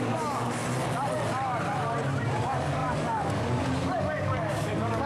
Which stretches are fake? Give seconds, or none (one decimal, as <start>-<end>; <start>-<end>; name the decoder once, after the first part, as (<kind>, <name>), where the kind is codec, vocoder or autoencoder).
0.0-0.6 (codec, DAC); 2.3-5.1